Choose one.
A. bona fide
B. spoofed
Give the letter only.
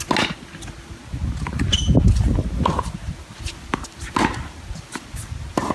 A